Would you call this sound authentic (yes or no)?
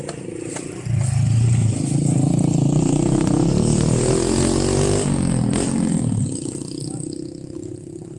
yes